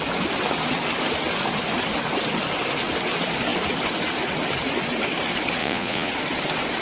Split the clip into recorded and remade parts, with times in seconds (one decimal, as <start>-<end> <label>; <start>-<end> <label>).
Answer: 0.0-5.6 recorded; 5.6-6.1 remade; 6.1-6.8 recorded